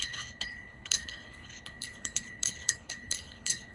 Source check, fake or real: fake